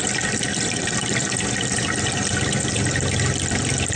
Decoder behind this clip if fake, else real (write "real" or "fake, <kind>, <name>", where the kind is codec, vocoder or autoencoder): fake, vocoder, BigVGAN v2